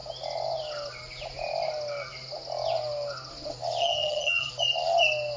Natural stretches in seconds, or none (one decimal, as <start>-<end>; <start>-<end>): 0.0-3.8; 4.5-5.4